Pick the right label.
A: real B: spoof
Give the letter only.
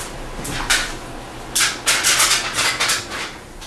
A